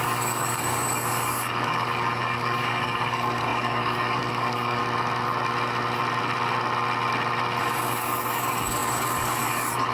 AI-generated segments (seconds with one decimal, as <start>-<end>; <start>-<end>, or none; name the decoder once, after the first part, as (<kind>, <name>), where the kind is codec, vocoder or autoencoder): 0.0-4.8 (codec, DAC); 7.6-9.9